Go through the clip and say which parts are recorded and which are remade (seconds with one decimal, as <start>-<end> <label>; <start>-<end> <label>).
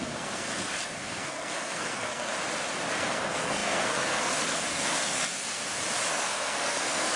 0.0-2.3 remade; 2.3-2.9 recorded; 2.9-5.6 remade; 5.6-6.1 recorded; 6.1-7.2 remade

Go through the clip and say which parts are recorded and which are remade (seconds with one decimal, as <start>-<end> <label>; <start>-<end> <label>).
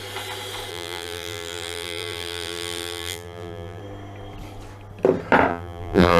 0.0-0.7 recorded; 0.7-3.8 remade; 3.8-5.5 recorded; 5.5-6.2 remade